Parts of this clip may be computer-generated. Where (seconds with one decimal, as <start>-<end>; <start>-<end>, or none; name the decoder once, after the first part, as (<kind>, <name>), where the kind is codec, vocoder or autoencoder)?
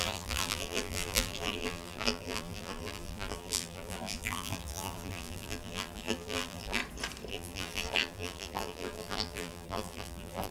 0.0-6.8 (vocoder, BigVGAN v2); 7.3-10.5